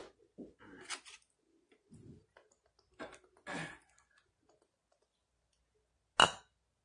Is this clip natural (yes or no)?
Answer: yes